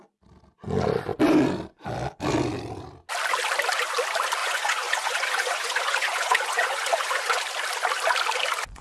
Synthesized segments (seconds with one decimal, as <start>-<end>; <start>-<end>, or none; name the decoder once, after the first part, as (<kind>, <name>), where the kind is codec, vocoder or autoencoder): 4.4-7.4 (vocoder, Vocos)